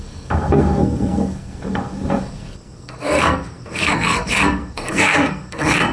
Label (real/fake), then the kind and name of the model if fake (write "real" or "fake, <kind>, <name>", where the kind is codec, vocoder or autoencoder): fake, codec, SNAC